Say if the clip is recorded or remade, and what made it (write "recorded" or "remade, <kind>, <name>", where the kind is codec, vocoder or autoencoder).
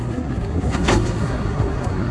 remade, codec, SNAC